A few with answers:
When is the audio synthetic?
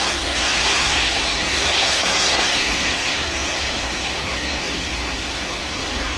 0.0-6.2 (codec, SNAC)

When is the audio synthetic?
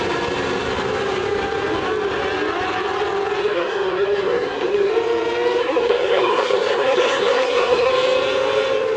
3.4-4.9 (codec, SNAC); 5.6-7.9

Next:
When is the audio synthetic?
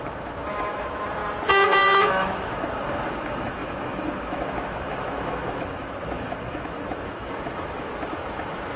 0.0-1.2 (autoencoder, DAC-VAE); 2.1-8.8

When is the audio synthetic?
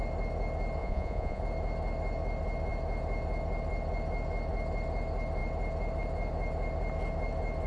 0.8-1.4 (vocoder, Vocos)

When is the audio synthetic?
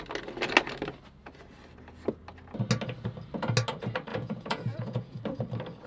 4.1-5.2 (vocoder, Vocos)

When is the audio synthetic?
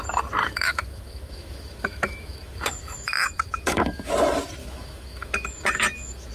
0.4-4.1 (autoencoder, DAC-VAE); 4.6-6.3